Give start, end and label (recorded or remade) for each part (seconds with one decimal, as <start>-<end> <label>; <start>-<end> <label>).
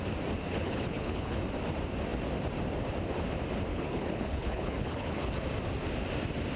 0.0-0.5 recorded; 0.5-1.4 remade; 1.4-3.7 recorded; 3.7-5.4 remade; 5.4-6.6 recorded